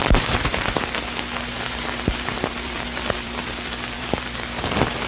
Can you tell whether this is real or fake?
fake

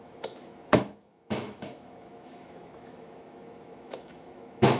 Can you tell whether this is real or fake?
fake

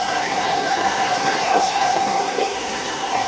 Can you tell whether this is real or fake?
fake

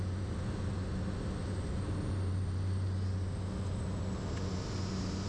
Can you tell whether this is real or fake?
real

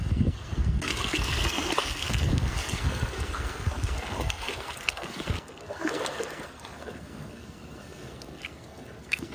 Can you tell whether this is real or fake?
fake